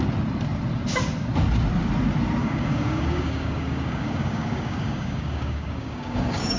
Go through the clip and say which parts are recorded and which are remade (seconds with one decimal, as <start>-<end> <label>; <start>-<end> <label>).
0.0-2.4 recorded; 2.4-6.6 remade